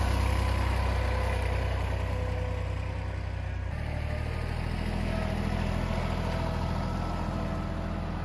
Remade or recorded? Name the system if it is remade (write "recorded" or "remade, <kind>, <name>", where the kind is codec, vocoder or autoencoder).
recorded